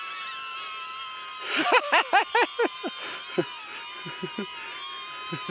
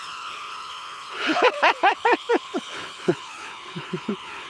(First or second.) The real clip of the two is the first